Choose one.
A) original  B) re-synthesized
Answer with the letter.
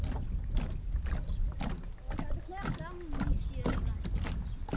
A